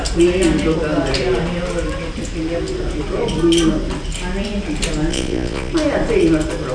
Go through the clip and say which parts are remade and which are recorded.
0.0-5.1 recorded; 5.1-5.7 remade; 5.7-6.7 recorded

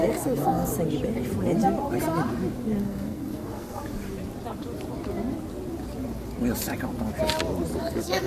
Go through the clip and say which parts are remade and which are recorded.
0.0-0.7 remade; 0.7-2.8 recorded; 2.8-3.8 remade; 3.8-7.8 recorded; 7.8-8.3 remade

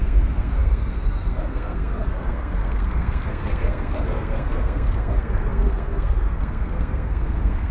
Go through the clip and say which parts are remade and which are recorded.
0.0-7.7 remade

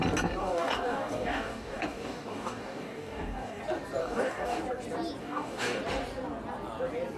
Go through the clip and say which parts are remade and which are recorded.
0.0-0.4 recorded; 0.4-3.6 remade; 3.6-4.0 recorded; 4.0-4.6 remade; 4.6-5.2 recorded; 5.2-5.8 remade; 5.8-7.2 recorded

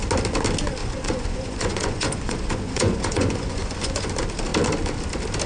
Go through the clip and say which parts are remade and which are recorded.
0.0-0.8 recorded; 0.8-4.1 remade; 4.1-5.5 recorded

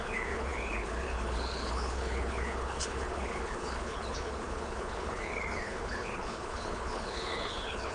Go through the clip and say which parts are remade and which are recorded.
0.0-7.9 remade

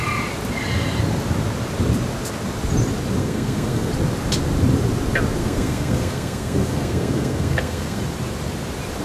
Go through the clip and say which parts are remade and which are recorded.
0.0-3.2 recorded; 3.2-3.9 remade; 3.9-5.4 recorded; 5.4-8.0 remade; 8.0-9.0 recorded

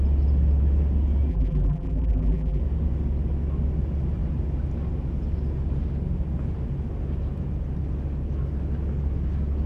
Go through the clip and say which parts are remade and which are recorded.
0.0-1.3 recorded; 1.3-2.6 remade; 2.6-9.7 recorded